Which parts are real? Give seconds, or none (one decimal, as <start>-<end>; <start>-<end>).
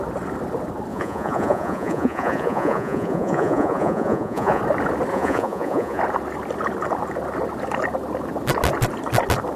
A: 0.0-0.9; 4.6-5.1; 6.0-9.6